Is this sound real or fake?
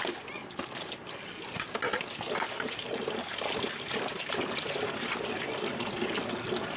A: real